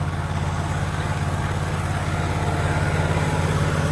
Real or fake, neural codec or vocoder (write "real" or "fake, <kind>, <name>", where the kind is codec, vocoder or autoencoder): fake, codec, DAC